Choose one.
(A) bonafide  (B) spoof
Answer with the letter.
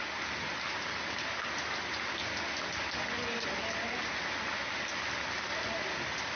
A